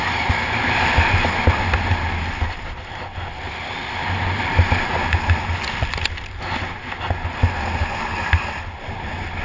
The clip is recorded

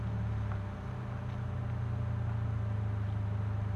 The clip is recorded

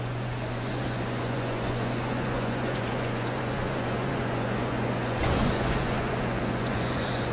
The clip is remade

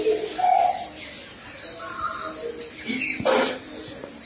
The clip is recorded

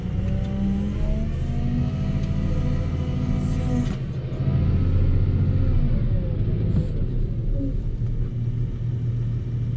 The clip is recorded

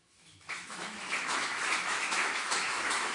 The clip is remade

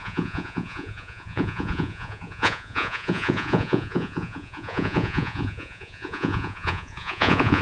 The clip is remade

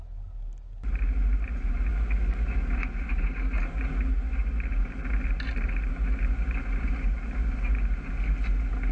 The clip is recorded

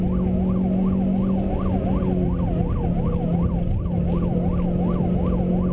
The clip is recorded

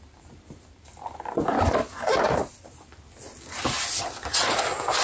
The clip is recorded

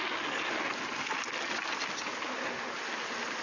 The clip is recorded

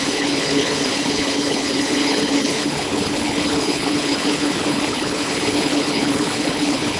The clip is remade